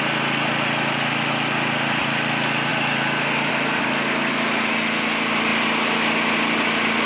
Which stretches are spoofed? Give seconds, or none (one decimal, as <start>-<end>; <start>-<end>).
none